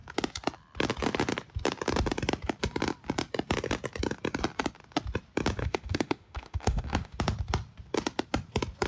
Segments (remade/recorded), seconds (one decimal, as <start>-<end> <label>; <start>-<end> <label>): 0.0-5.6 recorded; 5.6-7.2 remade; 7.2-8.9 recorded